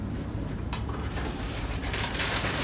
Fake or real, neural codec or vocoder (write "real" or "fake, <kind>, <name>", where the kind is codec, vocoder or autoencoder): fake, vocoder, BigVGAN v2